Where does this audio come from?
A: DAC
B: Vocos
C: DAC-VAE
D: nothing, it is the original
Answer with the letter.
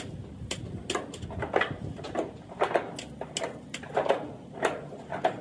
D